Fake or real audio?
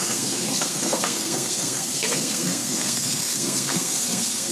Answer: fake